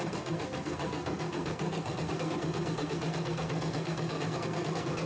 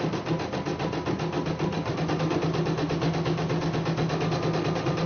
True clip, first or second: second